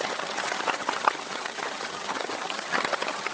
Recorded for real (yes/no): no